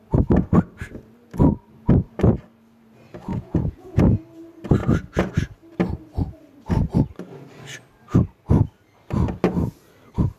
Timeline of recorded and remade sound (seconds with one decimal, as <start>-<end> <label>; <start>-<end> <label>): 0.0-3.3 recorded; 3.3-4.2 remade; 4.2-10.4 recorded